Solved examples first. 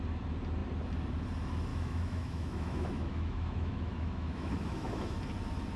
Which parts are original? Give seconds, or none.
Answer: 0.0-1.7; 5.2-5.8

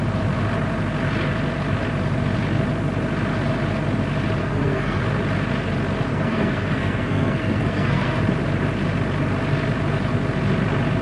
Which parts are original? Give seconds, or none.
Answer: 0.0-4.4; 5.0-6.1; 8.2-11.0

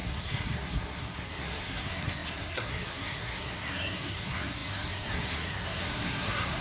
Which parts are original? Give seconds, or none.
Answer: none

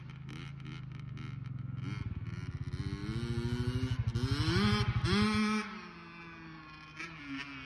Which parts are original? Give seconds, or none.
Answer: 0.0-7.7

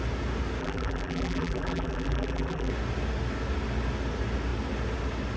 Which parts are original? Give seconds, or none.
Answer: 0.0-0.6; 2.7-5.4

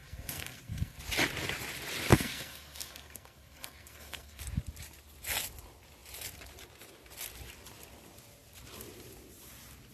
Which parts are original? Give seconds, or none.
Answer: 1.0-2.1; 4.4-9.9